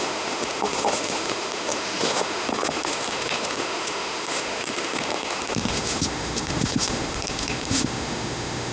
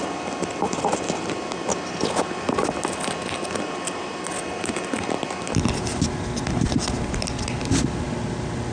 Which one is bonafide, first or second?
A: second